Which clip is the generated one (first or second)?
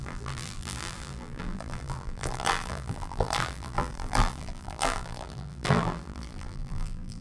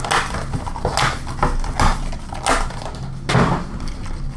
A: first